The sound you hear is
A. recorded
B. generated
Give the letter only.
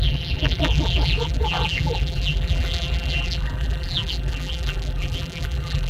B